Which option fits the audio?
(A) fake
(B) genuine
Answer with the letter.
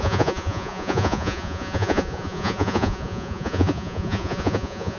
A